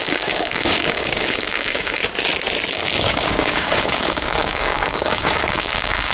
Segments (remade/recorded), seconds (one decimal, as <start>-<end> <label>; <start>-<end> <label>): 0.0-2.0 remade; 2.0-2.7 recorded; 2.7-6.1 remade